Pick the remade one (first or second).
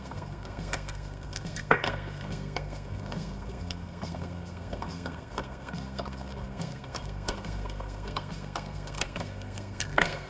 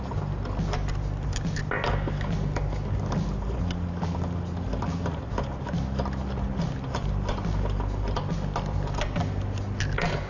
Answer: first